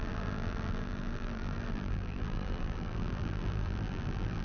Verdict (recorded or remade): remade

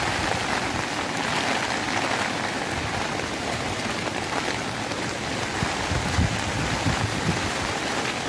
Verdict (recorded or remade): remade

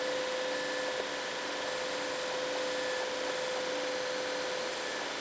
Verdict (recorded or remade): recorded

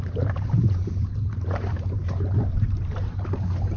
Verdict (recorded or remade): remade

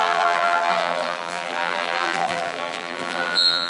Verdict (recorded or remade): remade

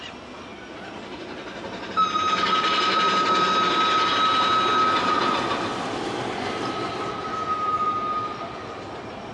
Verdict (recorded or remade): recorded